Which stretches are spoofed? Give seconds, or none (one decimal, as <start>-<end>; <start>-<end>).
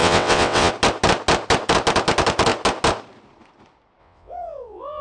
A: 0.0-0.7; 4.0-5.0